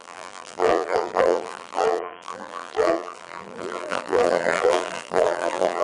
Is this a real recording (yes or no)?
no